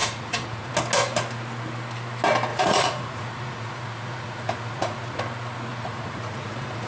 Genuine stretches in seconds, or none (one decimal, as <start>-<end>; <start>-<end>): 0.7-2.5; 5.2-5.7